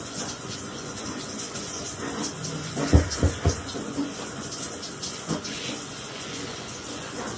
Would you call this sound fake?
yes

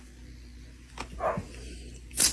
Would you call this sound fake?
no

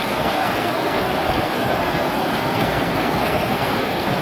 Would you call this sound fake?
yes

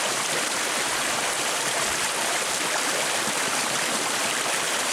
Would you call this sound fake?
yes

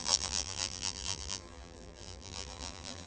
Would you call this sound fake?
yes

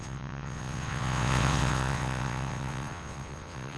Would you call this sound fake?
yes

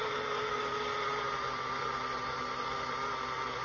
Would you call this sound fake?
no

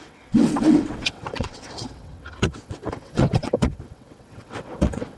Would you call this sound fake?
yes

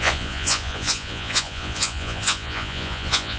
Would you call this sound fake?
yes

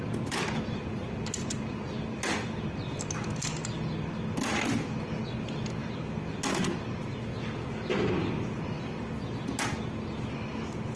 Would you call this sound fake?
no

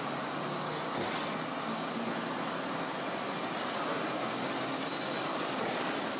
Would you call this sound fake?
no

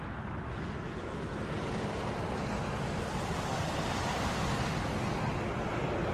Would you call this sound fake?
no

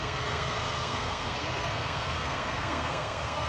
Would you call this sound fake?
yes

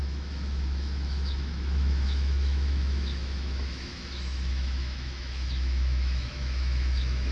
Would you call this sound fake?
yes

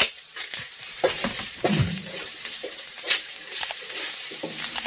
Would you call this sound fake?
yes